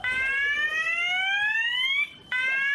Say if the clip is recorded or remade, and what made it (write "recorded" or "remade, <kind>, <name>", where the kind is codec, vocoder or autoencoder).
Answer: recorded